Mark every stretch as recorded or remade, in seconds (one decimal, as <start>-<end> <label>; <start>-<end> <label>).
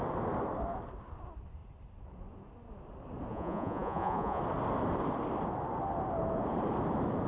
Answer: 0.0-3.3 recorded; 3.3-4.4 remade; 4.4-7.3 recorded